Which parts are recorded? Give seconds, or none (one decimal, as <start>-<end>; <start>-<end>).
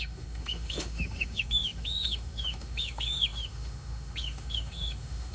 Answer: none